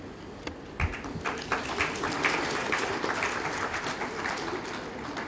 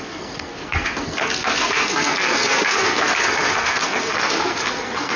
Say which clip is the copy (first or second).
second